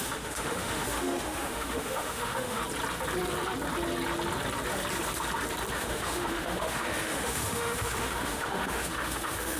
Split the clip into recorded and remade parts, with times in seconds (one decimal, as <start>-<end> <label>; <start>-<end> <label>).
0.0-2.6 remade; 2.6-5.7 recorded; 5.7-9.6 remade